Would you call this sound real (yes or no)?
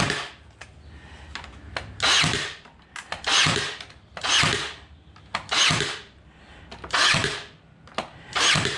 yes